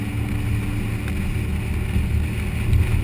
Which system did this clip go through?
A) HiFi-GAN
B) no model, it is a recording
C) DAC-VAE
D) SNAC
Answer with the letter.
B